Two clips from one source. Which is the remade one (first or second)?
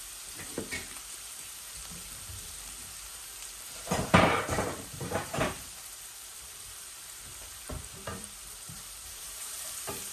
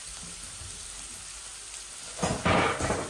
first